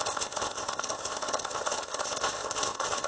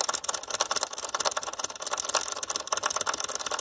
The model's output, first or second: first